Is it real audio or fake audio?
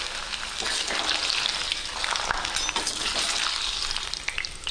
real